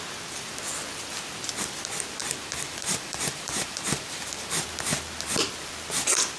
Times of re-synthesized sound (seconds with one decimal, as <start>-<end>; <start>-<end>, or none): 2.2-4.6